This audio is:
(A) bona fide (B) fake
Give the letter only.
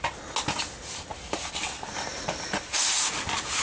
A